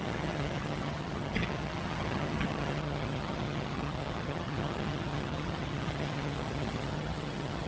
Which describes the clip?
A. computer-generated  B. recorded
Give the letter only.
A